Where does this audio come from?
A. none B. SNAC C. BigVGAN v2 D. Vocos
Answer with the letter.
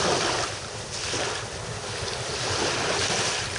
A